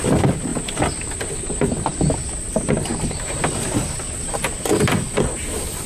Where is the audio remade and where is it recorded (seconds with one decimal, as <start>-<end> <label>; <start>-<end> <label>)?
0.0-5.9 recorded